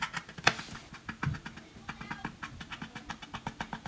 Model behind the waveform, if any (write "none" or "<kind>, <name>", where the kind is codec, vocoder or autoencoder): none